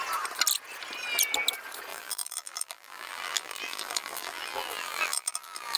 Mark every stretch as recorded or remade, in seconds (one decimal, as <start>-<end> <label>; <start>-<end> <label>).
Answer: 0.0-1.9 recorded; 1.9-5.8 remade